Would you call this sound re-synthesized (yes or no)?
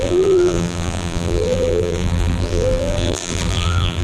yes